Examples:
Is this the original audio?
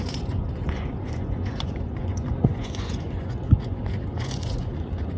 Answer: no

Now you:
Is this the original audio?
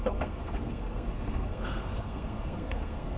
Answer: no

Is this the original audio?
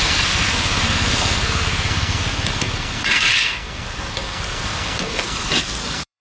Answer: no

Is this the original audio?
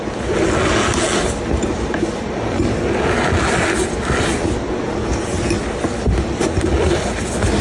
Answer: yes